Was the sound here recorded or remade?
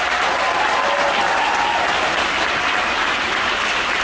recorded